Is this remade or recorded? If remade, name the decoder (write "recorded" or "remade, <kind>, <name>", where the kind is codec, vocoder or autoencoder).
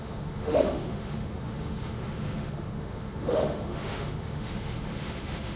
remade, autoencoder, DAC-VAE